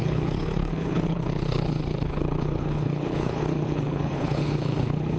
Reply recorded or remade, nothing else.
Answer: remade